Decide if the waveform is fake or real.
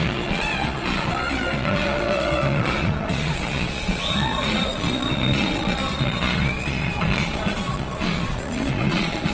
fake